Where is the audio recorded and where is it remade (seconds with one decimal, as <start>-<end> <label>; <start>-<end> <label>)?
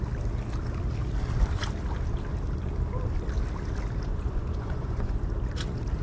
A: 0.0-4.1 recorded; 4.1-5.2 remade; 5.2-6.0 recorded